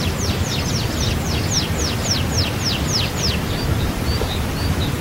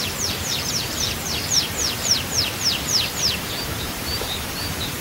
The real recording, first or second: first